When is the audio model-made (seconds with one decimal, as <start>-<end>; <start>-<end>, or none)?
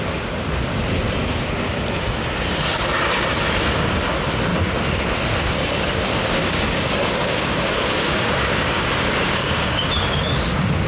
6.4-10.9